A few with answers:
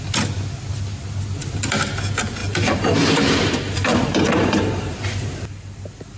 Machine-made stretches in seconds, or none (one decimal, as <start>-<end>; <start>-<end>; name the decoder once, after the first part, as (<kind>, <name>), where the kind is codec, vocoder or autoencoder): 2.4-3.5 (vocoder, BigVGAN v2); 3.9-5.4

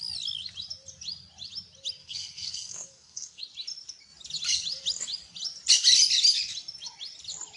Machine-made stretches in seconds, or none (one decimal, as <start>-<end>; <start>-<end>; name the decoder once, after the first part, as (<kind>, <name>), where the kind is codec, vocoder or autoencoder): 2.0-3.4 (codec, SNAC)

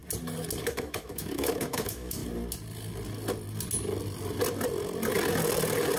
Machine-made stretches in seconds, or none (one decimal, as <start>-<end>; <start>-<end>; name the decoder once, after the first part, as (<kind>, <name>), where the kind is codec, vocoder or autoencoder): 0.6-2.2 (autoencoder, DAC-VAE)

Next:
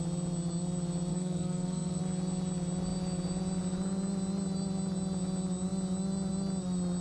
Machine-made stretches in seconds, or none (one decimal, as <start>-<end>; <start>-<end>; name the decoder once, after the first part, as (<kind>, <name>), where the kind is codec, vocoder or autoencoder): 1.1-2.0 (codec, SNAC)